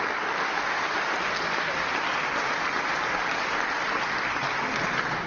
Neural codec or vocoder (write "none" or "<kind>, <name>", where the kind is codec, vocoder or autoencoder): none